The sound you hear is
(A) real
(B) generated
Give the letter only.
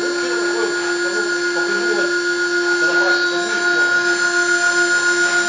A